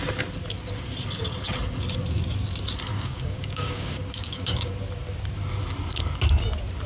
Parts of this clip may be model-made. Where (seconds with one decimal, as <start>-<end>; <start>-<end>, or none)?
2.9-4.7